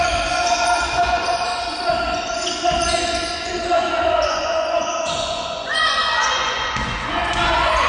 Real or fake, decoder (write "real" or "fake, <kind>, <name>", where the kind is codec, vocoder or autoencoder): fake, vocoder, Vocos